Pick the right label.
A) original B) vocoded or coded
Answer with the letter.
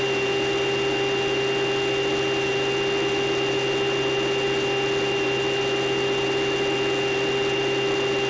A